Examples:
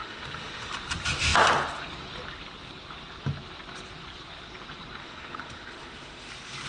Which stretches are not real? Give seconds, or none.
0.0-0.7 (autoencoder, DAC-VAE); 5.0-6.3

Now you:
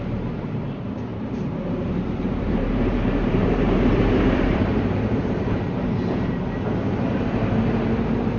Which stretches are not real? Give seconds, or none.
1.1-5.6 (vocoder, BigVGAN v2)